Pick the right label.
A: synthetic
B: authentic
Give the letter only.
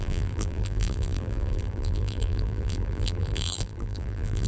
A